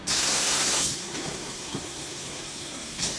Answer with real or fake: fake